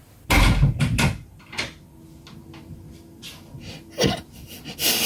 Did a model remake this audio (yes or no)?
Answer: no